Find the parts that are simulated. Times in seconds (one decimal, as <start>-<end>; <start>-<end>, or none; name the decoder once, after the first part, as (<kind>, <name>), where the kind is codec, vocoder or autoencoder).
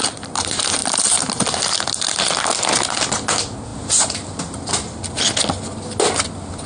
0.8-1.6 (vocoder, BigVGAN v2)